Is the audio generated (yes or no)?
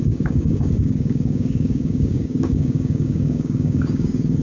yes